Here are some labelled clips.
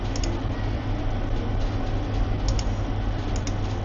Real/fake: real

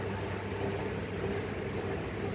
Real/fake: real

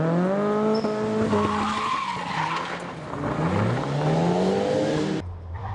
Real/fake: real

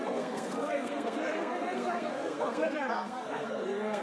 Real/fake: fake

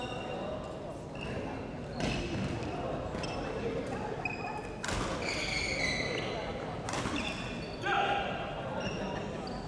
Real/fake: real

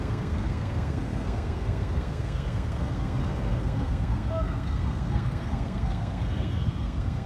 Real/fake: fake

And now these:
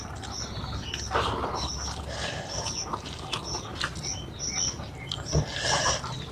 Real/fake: real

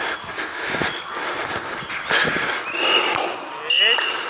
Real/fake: real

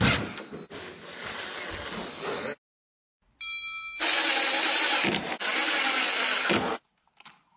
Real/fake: real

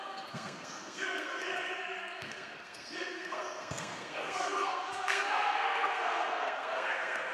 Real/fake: fake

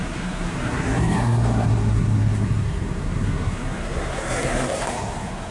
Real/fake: fake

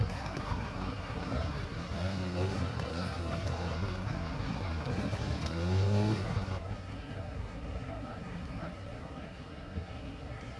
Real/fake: fake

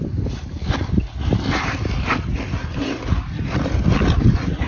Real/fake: real